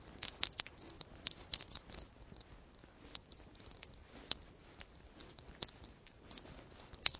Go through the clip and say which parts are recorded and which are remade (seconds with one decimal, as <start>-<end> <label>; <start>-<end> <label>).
0.0-7.2 recorded